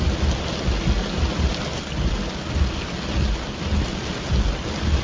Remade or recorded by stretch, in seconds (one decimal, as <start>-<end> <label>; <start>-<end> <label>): 0.0-5.0 recorded